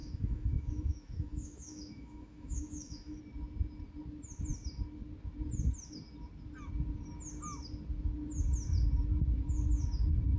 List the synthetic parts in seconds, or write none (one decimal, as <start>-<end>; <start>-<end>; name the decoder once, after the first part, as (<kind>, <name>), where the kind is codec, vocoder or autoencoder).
0.0-3.2 (autoencoder, DAC-VAE)